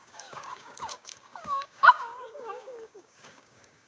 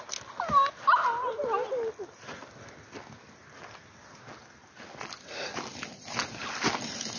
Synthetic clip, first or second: first